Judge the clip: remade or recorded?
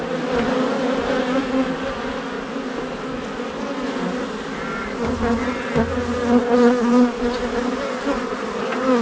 recorded